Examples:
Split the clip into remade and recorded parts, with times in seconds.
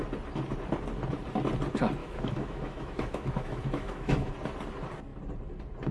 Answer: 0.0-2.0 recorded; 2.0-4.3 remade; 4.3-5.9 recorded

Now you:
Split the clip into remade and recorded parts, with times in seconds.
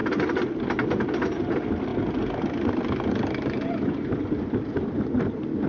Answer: 0.0-0.6 recorded; 0.6-1.9 remade; 1.9-3.7 recorded; 3.7-5.7 remade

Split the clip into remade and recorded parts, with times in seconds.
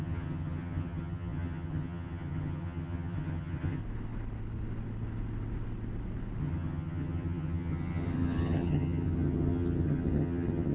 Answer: 0.0-3.8 remade; 3.8-6.4 recorded; 6.4-10.7 remade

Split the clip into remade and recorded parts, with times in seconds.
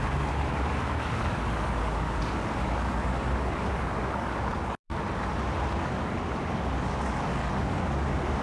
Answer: 0.0-4.9 remade; 4.9-5.8 recorded; 5.8-8.4 remade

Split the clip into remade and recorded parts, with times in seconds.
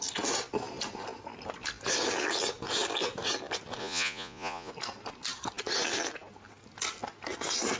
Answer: 0.0-3.8 recorded; 3.8-4.7 remade; 4.7-7.8 recorded